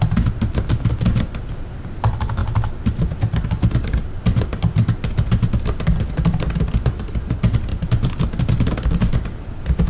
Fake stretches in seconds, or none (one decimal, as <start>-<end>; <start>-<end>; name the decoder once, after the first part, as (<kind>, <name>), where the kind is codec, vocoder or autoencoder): none